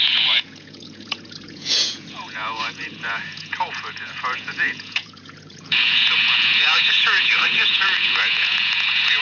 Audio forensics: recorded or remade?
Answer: remade